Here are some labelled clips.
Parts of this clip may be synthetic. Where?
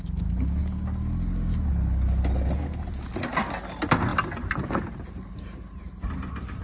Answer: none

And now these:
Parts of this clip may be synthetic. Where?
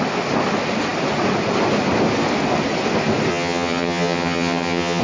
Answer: 3.3-5.0 (vocoder, HiFi-GAN)